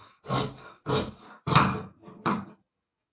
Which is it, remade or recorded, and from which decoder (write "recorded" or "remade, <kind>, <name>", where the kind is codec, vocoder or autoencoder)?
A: remade, codec, DAC